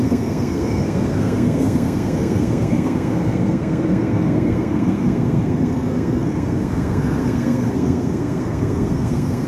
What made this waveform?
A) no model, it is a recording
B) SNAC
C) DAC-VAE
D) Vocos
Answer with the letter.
B